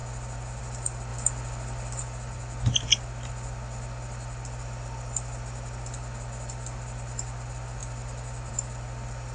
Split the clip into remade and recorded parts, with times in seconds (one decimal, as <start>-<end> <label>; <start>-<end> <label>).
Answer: 0.0-9.3 recorded